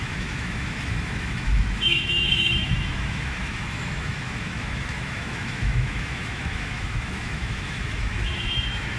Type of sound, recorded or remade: remade